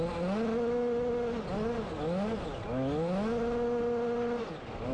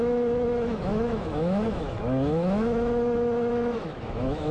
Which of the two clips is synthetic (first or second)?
second